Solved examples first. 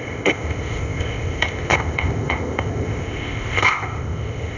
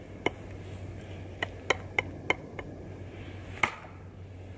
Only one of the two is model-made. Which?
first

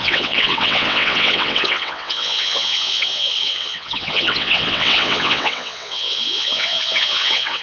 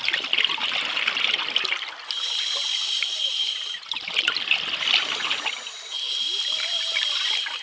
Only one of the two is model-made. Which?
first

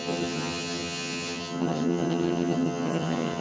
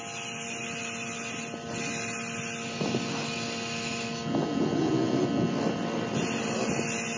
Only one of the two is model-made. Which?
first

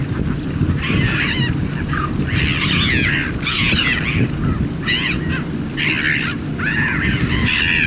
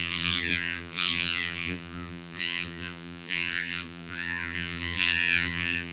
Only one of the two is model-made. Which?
second